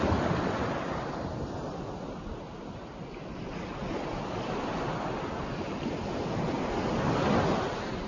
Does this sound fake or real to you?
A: real